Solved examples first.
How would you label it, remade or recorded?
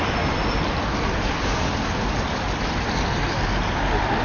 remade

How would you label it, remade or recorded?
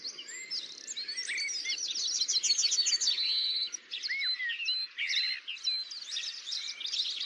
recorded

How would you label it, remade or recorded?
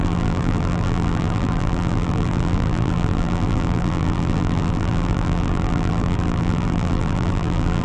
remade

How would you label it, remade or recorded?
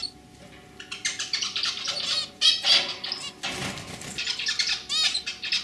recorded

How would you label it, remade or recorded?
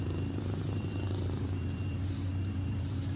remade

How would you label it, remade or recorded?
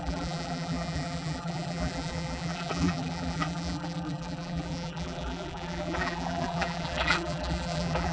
remade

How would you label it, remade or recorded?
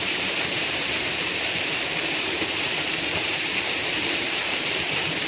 remade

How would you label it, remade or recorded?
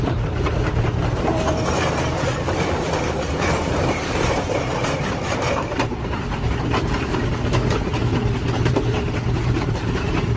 remade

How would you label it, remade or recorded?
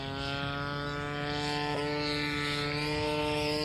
recorded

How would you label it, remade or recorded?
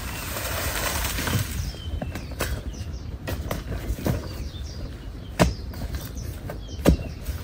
remade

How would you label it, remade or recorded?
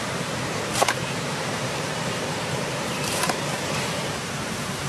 remade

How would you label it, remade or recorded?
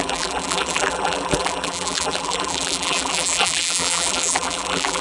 remade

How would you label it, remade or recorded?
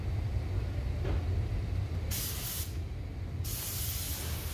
recorded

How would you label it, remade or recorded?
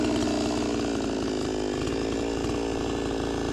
recorded